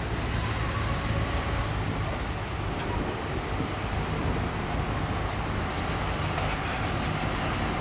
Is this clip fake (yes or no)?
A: no